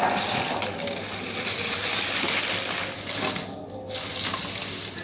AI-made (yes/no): no